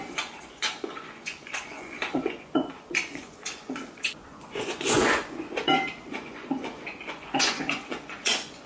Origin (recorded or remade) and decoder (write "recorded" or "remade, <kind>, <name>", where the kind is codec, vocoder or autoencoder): remade, vocoder, Vocos